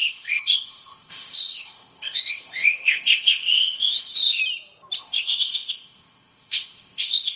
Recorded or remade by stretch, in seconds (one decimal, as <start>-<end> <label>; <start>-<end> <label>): 0.0-4.4 remade; 4.4-5.0 recorded; 5.0-7.4 remade